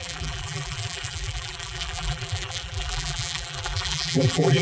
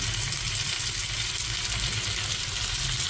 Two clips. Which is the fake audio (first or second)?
first